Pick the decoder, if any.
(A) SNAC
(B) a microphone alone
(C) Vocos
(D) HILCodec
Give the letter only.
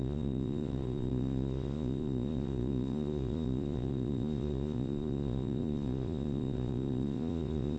C